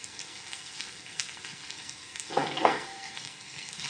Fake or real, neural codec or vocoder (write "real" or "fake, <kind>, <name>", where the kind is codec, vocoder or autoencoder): fake, codec, SNAC